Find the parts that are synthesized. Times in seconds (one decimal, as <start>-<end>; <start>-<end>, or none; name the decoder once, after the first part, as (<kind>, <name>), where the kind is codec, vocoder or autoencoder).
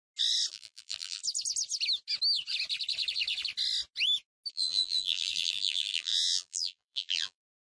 0.5-1.2 (vocoder, BigVGAN v2); 4.5-7.6